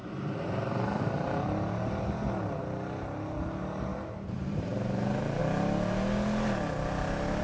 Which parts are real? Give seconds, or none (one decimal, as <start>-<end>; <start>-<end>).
2.6-3.9; 5.4-7.4

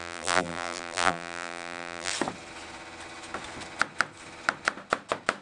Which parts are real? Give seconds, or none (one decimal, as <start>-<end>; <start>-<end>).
2.1-5.4

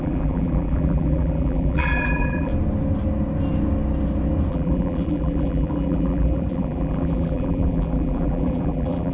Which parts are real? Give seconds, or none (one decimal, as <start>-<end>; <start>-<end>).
2.5-4.5

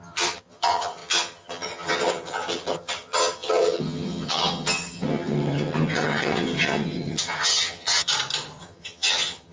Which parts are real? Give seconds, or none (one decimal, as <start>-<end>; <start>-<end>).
8.1-8.6

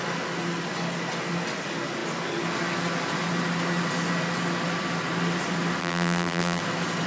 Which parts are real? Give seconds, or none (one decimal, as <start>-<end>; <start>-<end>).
0.0-5.8; 6.6-7.1